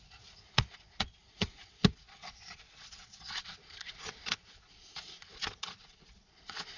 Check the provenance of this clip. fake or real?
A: fake